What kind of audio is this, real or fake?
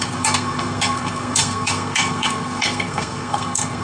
fake